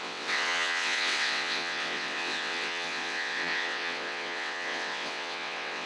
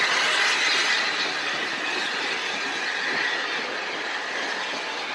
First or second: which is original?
second